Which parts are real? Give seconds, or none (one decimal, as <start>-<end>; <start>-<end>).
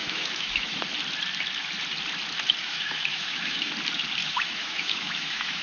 0.8-2.6; 3.7-4.2